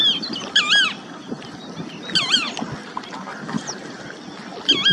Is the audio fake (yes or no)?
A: no